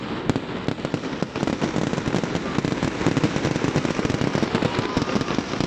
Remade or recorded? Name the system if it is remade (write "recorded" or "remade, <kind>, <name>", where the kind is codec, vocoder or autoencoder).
recorded